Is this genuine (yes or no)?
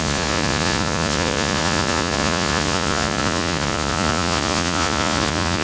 no